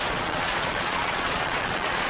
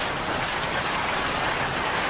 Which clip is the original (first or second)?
second